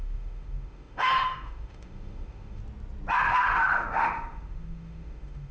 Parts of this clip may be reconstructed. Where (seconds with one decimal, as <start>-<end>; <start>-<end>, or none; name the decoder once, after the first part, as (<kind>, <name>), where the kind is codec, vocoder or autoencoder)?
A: 0.0-2.6 (autoencoder, DAC-VAE); 3.2-5.5

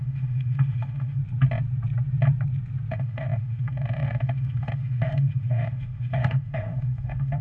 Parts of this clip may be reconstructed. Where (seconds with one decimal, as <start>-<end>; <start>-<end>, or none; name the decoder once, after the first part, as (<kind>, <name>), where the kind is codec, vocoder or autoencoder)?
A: 0.0-1.2 (autoencoder, DAC-VAE); 2.9-7.4

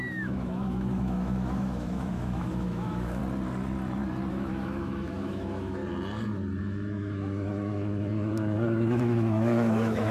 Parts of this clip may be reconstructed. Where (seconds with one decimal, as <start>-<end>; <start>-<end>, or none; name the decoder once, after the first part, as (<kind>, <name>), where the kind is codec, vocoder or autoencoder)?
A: 0.0-3.2 (autoencoder, DAC-VAE); 4.3-5.8; 6.6-10.1

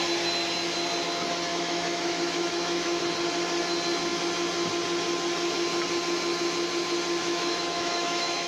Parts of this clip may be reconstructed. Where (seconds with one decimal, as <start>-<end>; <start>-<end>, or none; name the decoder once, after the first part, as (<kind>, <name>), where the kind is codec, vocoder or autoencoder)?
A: 1.5-3.0 (autoencoder, DAC-VAE); 7.2-8.5

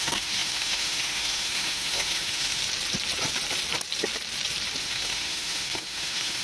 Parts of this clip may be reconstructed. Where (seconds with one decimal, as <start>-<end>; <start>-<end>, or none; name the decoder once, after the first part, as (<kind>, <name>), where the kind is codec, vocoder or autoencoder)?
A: 0.0-2.6 (autoencoder, DAC-VAE); 4.8-6.4